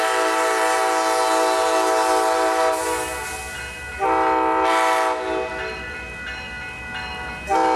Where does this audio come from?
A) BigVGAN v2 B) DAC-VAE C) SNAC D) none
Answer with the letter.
D